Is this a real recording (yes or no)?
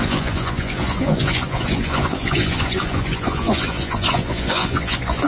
no